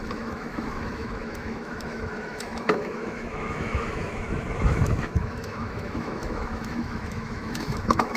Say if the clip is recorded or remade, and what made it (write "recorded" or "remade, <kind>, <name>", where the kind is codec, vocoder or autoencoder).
remade, autoencoder, DAC-VAE